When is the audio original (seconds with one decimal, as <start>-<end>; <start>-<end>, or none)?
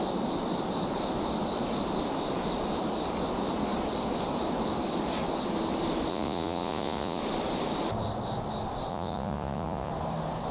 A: 0.0-6.1; 7.2-8.9; 9.9-10.5